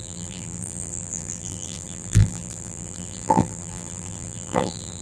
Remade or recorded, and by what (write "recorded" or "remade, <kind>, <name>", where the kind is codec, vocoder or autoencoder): remade, vocoder, BigVGAN v2